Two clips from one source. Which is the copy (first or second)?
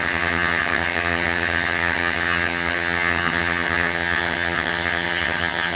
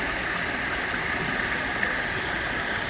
first